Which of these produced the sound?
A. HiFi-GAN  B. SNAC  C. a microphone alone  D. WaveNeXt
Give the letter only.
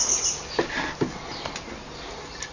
C